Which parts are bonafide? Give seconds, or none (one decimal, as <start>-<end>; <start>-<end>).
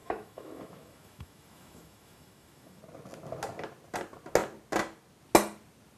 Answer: 2.8-6.0